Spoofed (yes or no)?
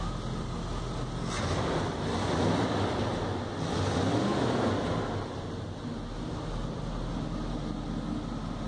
no